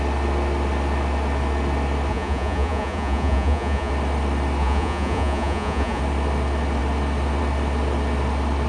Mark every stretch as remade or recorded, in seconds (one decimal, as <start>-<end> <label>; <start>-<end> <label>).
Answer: 0.0-2.1 recorded; 2.1-3.9 remade; 3.9-4.6 recorded; 4.6-6.0 remade; 6.0-8.7 recorded